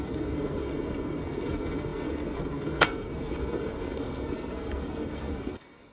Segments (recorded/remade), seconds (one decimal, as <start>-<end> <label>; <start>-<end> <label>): 0.0-5.9 remade